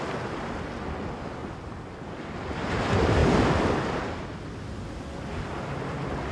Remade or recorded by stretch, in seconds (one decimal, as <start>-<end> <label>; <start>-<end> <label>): 0.0-6.3 recorded